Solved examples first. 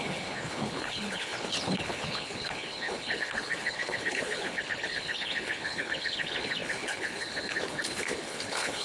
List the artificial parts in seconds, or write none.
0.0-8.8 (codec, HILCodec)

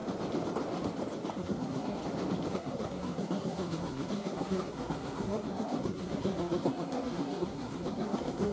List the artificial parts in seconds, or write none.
1.3-2.0 (codec, SNAC); 2.5-8.5